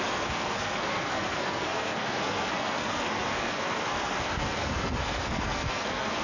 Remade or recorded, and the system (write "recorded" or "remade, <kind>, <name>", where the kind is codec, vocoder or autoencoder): remade, codec, SNAC